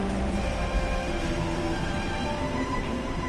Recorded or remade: remade